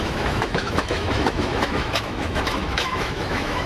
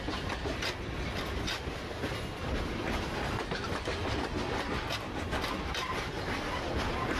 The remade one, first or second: first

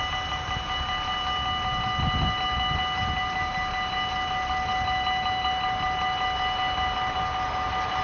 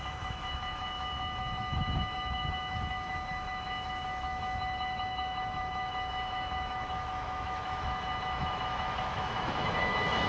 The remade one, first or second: second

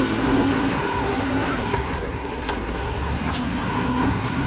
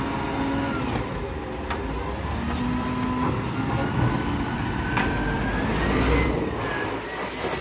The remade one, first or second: first